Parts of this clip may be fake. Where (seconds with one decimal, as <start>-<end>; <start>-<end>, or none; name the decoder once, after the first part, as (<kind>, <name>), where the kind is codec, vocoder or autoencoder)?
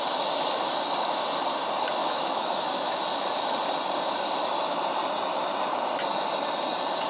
2.0-2.9 (autoencoder, DAC-VAE)